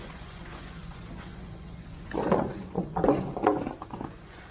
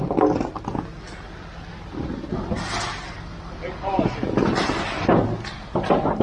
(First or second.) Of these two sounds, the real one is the second